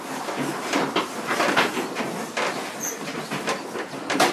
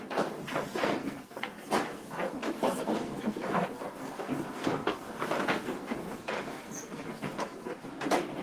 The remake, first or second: second